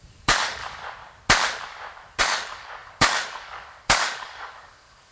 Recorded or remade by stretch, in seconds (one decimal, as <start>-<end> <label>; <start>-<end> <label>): 0.0-0.6 remade; 0.6-2.2 recorded; 2.2-5.1 remade